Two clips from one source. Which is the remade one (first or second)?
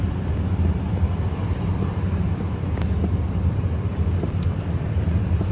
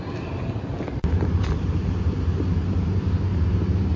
first